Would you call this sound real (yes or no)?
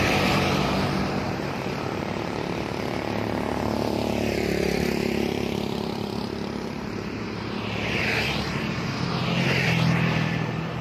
no